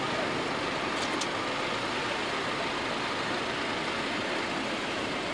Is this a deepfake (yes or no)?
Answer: no